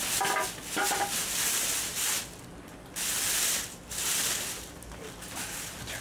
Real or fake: real